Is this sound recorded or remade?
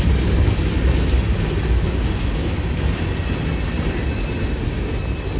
recorded